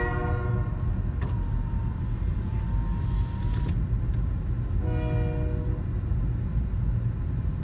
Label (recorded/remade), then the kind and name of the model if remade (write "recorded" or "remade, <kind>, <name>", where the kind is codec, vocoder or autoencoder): recorded